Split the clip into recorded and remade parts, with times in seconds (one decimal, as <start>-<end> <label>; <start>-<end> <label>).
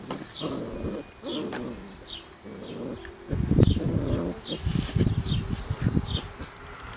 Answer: 0.0-7.0 recorded